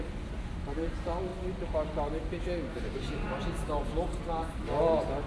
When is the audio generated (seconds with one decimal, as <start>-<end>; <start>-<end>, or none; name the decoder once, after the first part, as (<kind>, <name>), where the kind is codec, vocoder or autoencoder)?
none